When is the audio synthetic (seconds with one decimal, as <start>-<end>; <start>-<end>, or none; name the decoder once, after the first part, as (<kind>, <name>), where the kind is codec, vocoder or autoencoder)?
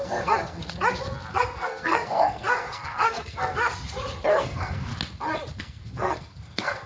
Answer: 0.0-0.6 (codec, SNAC); 1.3-3.7; 4.3-4.9; 5.6-6.9